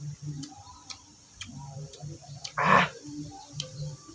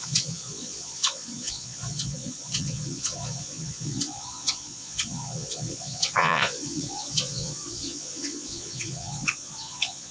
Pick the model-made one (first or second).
second